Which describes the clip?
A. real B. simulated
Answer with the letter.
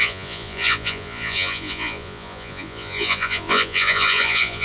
B